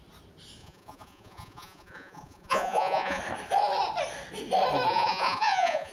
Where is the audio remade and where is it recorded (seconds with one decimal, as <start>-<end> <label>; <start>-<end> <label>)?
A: 0.0-0.6 recorded; 0.6-3.2 remade; 3.2-4.9 recorded; 4.9-5.9 remade